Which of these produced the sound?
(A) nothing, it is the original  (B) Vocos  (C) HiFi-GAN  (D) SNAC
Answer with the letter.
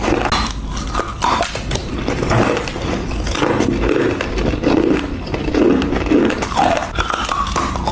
A